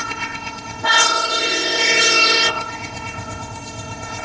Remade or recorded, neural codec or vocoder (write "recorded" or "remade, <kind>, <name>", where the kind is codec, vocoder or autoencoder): remade, codec, ZipCodec